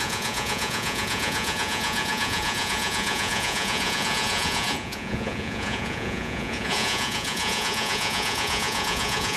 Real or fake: fake